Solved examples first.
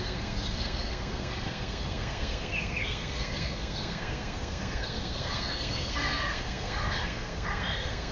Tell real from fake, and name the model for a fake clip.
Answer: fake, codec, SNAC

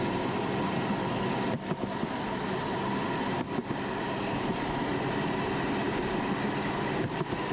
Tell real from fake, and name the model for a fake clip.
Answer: real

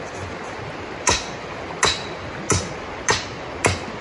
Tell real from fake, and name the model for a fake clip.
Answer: real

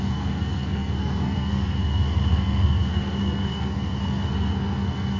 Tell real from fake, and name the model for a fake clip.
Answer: fake, codec, SNAC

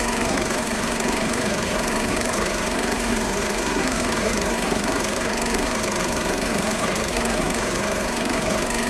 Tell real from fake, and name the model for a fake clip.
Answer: fake, codec, SNAC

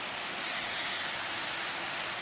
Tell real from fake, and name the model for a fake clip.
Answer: real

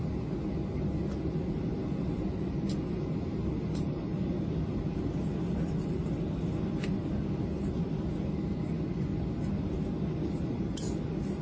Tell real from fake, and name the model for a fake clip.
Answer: real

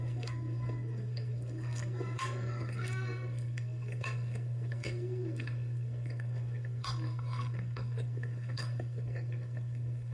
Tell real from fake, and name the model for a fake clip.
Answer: fake, codec, SNAC